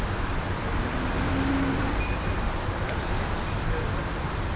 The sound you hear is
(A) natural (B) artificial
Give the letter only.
A